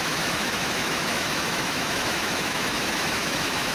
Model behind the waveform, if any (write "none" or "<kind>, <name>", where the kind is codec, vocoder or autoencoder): autoencoder, DAC-VAE